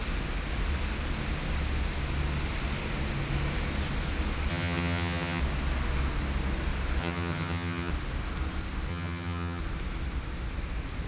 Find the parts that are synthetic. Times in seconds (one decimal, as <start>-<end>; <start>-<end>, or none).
4.5-5.4; 7.0-7.9; 8.9-9.6